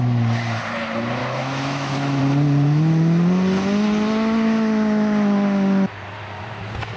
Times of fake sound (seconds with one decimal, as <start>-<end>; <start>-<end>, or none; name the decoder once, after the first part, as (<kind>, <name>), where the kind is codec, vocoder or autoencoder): 1.2-2.2 (autoencoder, DAC-VAE)